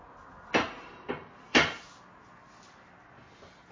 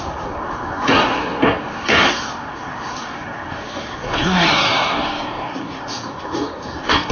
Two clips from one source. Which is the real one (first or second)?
first